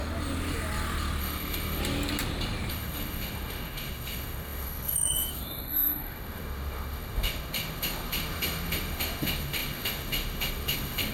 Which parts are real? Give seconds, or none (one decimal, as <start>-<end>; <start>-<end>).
0.0-1.2; 1.8-2.7